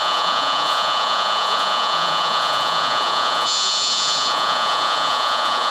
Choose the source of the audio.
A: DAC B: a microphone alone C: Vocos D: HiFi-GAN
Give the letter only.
C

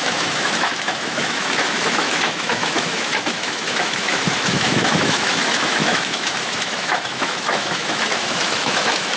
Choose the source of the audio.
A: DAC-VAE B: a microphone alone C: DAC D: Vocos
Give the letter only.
A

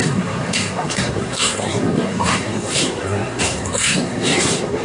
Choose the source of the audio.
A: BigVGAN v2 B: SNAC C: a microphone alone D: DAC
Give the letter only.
B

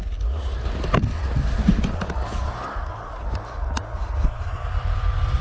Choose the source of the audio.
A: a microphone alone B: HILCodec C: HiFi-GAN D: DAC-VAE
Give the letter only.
A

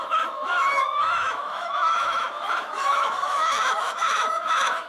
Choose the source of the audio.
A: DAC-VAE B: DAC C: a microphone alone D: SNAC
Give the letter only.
A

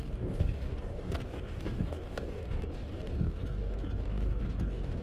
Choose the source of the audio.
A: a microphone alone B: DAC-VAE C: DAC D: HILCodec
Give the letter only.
C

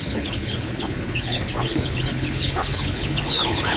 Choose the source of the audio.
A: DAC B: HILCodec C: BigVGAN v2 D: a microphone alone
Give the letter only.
B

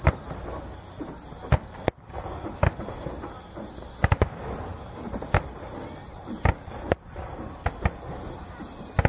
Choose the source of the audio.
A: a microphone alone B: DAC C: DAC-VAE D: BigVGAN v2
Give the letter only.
A